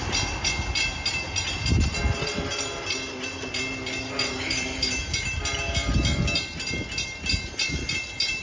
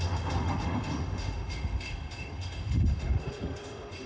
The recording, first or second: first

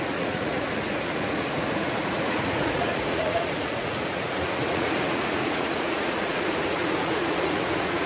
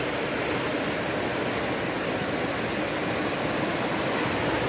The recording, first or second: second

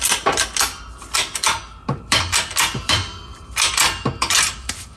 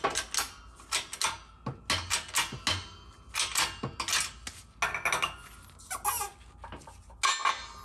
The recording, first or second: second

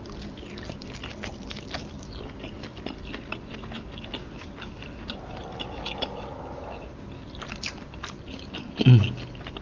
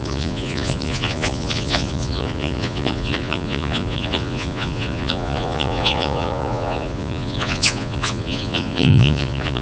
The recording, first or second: first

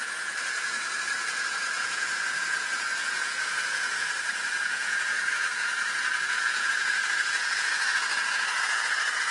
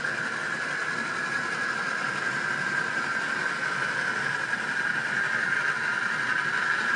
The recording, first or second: second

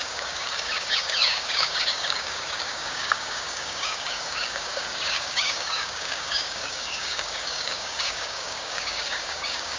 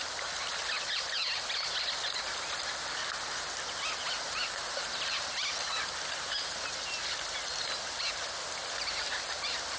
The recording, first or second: second